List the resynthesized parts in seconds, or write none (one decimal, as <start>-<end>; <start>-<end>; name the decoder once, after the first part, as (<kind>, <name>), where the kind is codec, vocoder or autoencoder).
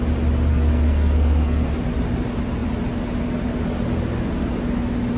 0.5-1.7 (codec, SNAC)